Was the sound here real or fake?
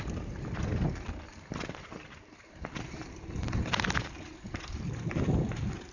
real